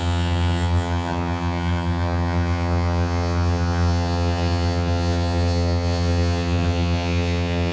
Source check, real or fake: fake